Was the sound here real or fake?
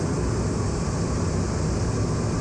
real